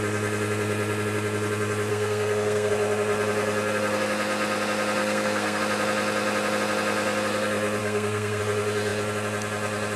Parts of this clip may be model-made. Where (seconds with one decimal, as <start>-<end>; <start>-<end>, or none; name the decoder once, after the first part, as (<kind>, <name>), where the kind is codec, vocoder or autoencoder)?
1.9-2.7 (codec, SNAC); 5.0-5.6; 7.8-8.4